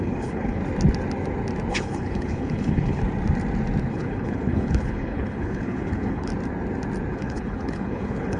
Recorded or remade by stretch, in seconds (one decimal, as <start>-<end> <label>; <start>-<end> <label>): 0.0-0.6 remade; 0.6-1.7 recorded; 1.7-3.0 remade; 3.0-3.8 recorded; 3.8-6.3 remade; 6.3-7.1 recorded; 7.1-8.4 remade